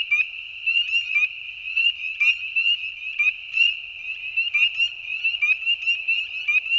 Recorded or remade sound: recorded